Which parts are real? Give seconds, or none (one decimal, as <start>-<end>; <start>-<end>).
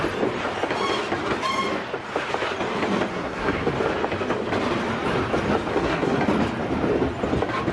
0.0-3.1; 3.7-5.7; 6.2-7.7